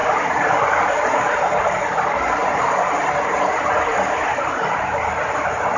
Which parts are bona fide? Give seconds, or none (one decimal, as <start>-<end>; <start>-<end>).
0.0-5.8